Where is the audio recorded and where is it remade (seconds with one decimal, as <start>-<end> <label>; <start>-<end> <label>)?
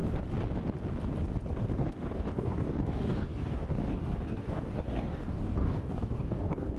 0.0-1.8 recorded; 1.8-6.8 remade